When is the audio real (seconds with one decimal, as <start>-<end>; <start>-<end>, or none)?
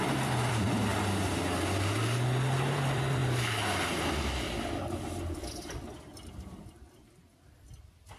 0.9-2.7; 3.2-7.4